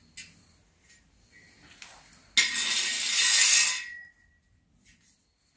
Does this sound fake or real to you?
real